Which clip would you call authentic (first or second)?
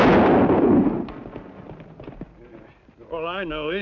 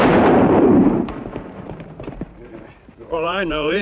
first